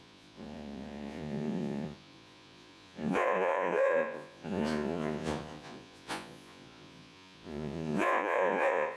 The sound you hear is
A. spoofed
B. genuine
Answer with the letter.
A